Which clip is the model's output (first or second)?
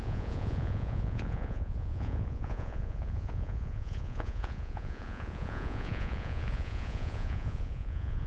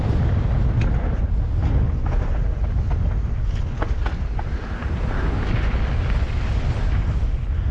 first